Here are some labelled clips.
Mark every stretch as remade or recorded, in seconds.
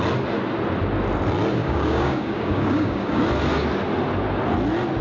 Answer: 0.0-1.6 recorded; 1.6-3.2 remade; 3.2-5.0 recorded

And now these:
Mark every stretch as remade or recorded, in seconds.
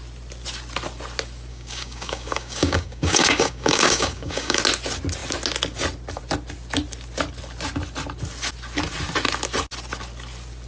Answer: 0.0-1.5 recorded; 1.5-4.6 remade; 4.6-10.7 recorded